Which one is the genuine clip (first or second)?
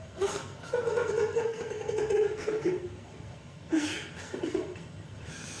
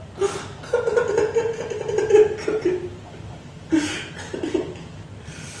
second